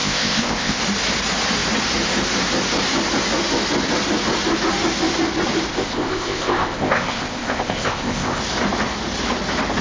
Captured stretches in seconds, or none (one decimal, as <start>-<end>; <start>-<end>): 0.8-5.7; 8.4-9.8